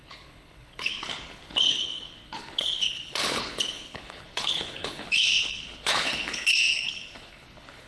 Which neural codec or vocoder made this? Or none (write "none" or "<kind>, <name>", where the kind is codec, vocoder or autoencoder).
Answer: codec, HILCodec